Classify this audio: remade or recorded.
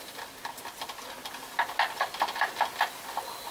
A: recorded